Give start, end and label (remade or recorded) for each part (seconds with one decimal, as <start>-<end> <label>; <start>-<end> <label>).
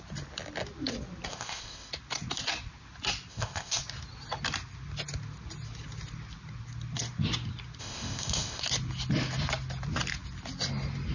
0.0-1.3 recorded; 1.3-1.9 remade; 1.9-3.3 recorded; 3.3-3.8 remade; 3.8-7.8 recorded; 7.8-8.6 remade; 8.6-11.1 recorded